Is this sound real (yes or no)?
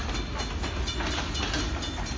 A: yes